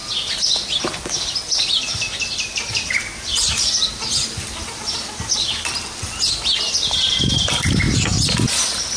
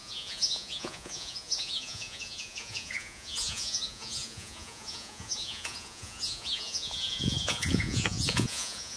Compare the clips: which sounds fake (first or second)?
second